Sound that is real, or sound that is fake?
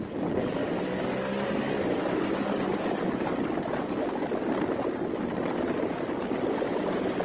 real